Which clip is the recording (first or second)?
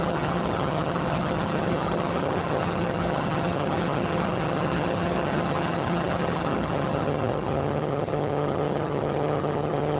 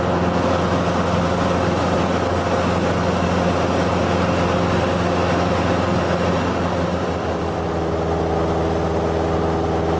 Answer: second